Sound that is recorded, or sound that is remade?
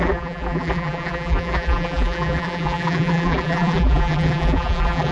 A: remade